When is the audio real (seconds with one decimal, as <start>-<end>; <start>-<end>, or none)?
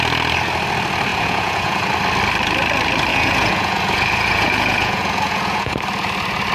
0.0-1.1; 1.8-3.1; 5.7-6.5